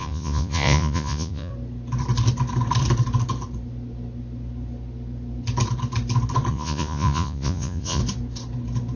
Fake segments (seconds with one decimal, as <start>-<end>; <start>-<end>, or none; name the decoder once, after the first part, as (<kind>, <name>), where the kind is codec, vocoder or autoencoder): 0.0-1.5 (vocoder, Vocos); 6.5-8.0